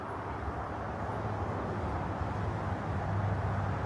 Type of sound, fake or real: real